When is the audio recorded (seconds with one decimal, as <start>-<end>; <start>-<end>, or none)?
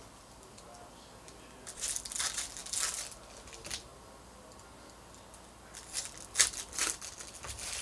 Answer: 0.0-7.8